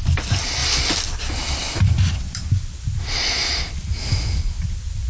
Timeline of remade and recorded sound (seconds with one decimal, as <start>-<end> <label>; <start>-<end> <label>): 0.0-5.1 recorded